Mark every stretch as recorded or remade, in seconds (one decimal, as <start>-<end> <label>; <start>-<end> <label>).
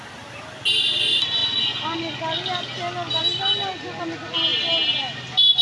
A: 0.0-5.6 recorded